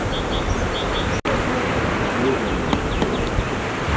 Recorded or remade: recorded